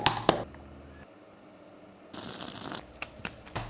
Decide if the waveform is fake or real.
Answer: real